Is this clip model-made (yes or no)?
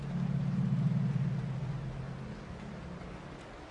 no